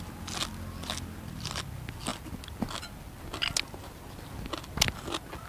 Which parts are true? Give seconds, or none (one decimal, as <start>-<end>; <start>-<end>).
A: 0.0-5.5